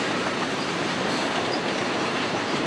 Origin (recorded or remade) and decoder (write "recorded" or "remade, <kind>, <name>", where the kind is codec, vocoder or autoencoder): remade, vocoder, BigVGAN v2